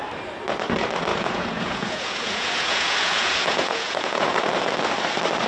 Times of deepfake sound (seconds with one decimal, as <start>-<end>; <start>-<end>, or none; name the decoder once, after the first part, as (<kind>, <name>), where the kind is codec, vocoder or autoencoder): 1.1-4.4 (vocoder, Vocos)